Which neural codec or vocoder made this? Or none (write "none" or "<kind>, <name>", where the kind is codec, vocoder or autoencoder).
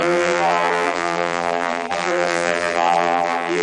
vocoder, BigVGAN v2